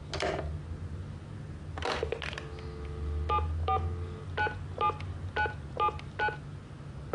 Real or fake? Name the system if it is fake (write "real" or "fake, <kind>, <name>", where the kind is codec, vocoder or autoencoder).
real